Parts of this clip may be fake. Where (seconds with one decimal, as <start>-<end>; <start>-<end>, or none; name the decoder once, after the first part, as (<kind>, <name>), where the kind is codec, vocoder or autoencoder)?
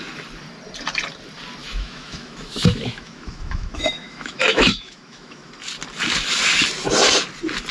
1.6-5.5 (autoencoder, DAC-VAE)